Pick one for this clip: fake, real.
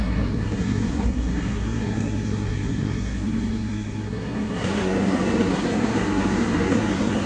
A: fake